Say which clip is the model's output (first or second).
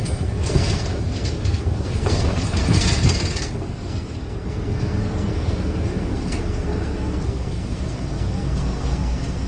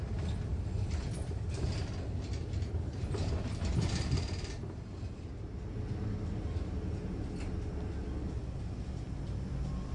first